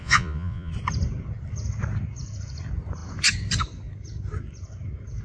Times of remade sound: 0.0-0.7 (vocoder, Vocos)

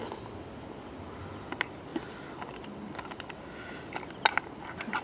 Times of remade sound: none

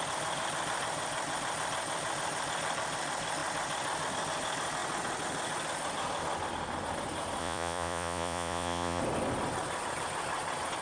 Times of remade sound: 7.4-9.0 (vocoder, Vocos)

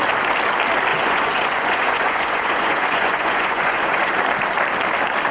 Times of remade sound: 0.9-4.1 (vocoder, Vocos)

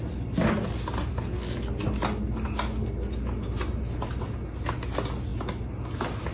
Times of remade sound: none